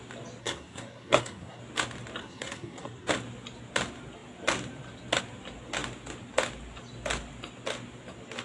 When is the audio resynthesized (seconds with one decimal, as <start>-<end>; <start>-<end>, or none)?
0.4-1.6; 2.2-3.1